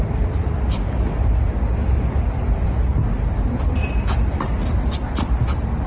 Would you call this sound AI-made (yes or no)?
no